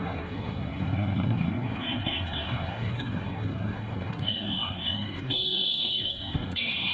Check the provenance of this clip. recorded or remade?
remade